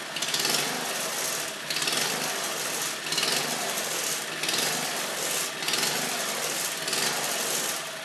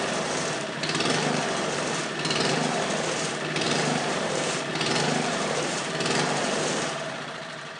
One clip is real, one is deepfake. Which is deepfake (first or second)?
second